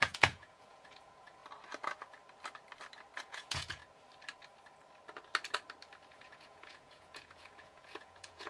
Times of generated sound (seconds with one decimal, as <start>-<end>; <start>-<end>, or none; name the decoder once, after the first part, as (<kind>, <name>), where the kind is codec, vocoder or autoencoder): 0.0-1.4 (vocoder, Vocos); 3.2-3.8; 6.1-8.5